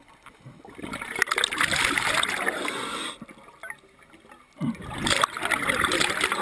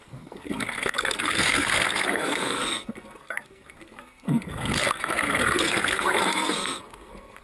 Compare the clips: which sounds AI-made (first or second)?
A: second